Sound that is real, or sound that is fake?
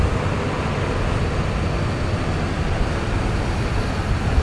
real